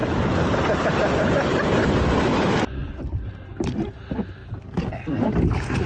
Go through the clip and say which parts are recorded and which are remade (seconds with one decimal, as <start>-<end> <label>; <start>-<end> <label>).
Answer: 0.0-1.9 remade; 1.9-5.9 recorded